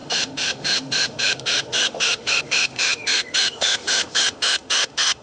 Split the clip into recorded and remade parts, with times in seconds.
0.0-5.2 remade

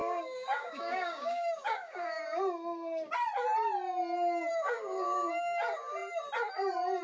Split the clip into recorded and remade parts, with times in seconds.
0.0-2.2 remade; 2.2-4.5 recorded; 4.5-5.3 remade; 5.3-7.0 recorded

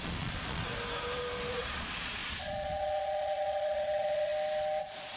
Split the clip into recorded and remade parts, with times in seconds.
0.0-0.7 remade; 0.7-1.5 recorded; 1.5-4.3 remade; 4.3-4.8 recorded; 4.8-5.2 remade

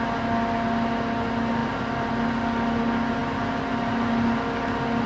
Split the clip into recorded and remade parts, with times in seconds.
0.0-5.1 recorded

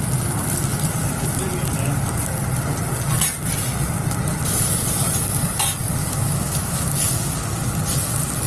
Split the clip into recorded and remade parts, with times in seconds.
0.0-6.0 recorded; 6.0-6.9 remade; 6.9-8.5 recorded

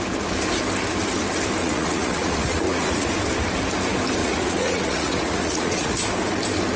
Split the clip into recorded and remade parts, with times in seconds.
0.0-1.6 recorded; 1.6-3.1 remade; 3.1-4.2 recorded; 4.2-6.0 remade; 6.0-6.8 recorded

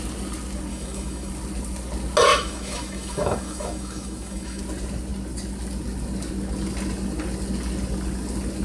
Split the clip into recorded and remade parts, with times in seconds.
0.0-0.7 recorded; 0.7-1.3 remade; 1.3-2.3 recorded; 2.3-4.6 remade; 4.6-8.6 recorded